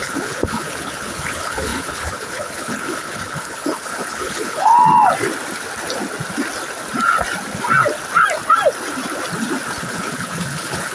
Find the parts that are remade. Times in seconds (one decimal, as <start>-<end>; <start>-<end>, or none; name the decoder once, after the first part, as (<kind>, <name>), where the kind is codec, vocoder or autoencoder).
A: 0.0-4.7 (codec, HILCodec); 9.8-10.9